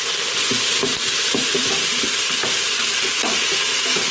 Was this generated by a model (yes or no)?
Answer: yes